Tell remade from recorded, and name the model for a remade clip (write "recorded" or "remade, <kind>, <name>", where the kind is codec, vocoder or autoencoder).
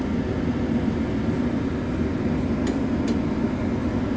recorded